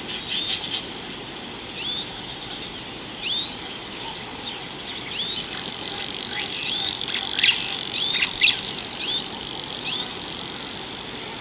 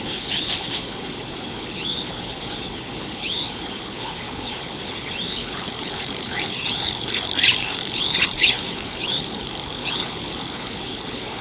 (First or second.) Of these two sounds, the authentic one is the first